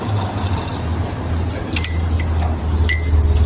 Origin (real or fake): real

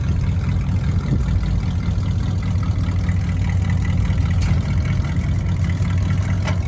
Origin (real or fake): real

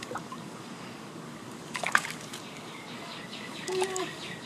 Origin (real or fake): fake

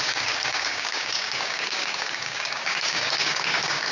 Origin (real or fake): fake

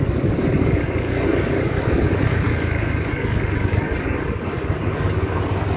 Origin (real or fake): fake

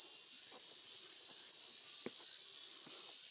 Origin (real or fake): real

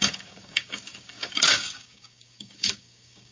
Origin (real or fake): fake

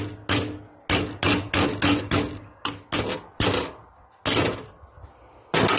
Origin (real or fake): real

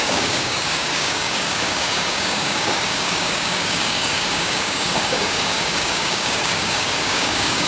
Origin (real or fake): fake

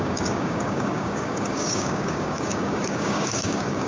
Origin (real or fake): fake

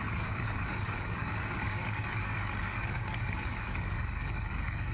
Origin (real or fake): fake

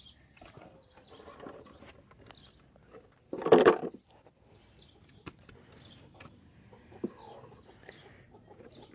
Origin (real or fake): real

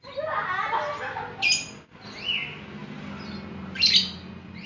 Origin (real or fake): real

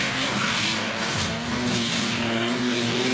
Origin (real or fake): fake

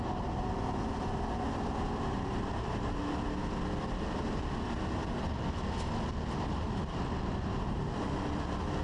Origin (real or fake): real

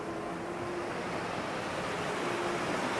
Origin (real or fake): real